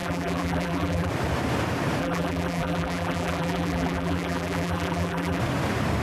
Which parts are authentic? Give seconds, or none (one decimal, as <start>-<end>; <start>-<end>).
1.1-2.0; 5.4-6.0